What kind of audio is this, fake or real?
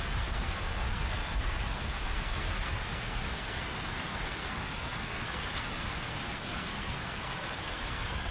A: fake